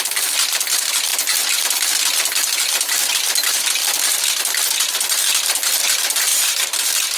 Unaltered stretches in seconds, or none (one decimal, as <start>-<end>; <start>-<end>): 0.0-6.3